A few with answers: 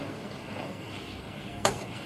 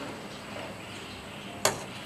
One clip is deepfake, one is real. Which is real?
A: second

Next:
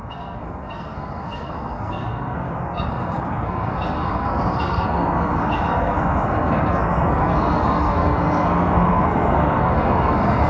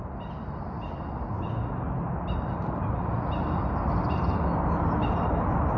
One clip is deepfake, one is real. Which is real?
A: second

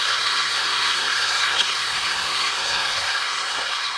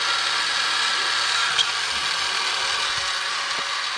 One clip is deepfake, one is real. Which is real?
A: second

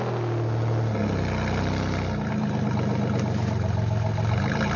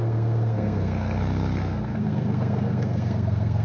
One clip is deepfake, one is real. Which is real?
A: first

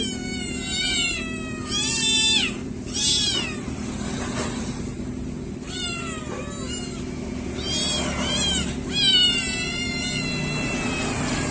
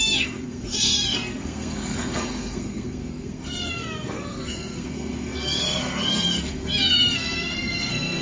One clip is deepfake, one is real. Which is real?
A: first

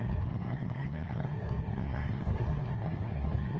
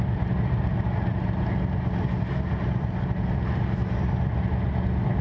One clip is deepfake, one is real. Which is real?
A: second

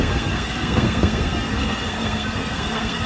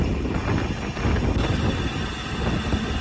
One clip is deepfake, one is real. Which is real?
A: second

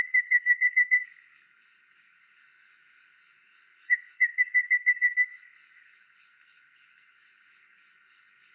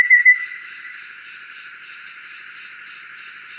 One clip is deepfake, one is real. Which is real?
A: second